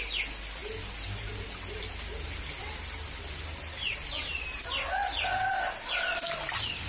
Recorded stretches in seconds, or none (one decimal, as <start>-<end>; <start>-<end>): 0.0-6.9